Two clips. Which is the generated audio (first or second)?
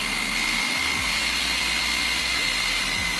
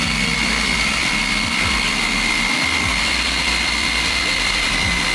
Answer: second